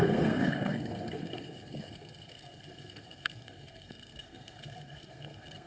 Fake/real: fake